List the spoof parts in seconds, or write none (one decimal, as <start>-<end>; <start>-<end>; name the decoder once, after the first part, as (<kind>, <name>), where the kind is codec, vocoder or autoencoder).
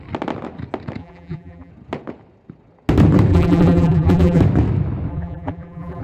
1.0-1.7 (vocoder, BigVGAN v2); 3.3-4.4; 5.1-6.0